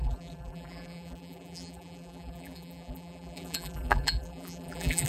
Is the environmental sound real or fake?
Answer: fake